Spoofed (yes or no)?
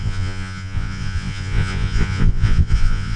yes